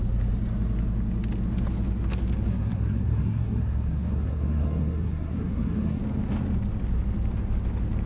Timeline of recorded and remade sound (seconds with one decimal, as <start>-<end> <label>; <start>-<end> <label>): 0.0-2.5 recorded; 2.5-6.0 remade; 6.0-8.1 recorded